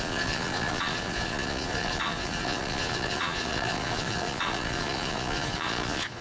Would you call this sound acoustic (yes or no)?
no